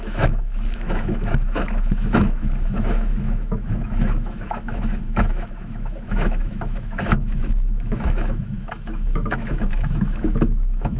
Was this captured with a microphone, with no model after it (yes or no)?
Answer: no